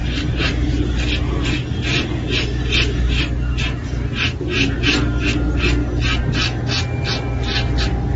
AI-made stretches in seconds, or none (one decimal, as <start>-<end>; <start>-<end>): 0.0-0.8